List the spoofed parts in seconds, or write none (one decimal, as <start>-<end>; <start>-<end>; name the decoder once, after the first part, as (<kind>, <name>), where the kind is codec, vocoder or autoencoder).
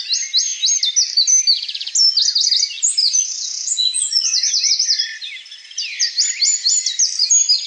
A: 3.0-4.7 (vocoder, Vocos)